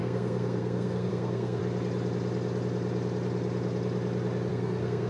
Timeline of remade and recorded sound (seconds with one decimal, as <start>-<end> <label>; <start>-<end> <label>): 0.0-1.6 remade; 1.6-4.5 recorded; 4.5-5.1 remade